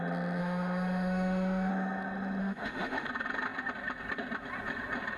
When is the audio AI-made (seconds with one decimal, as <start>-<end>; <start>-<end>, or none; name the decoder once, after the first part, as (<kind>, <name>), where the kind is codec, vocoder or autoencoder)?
0.4-1.7 (autoencoder, DAC-VAE); 2.4-3.1

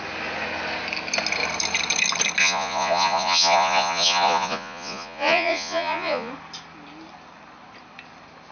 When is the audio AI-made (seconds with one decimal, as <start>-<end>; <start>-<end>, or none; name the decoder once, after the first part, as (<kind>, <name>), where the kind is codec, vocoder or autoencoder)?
2.4-6.3 (vocoder, Vocos)